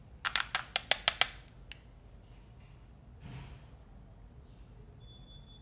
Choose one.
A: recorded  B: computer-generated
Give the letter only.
A